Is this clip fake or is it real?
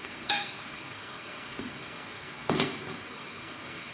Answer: fake